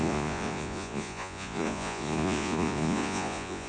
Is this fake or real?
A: fake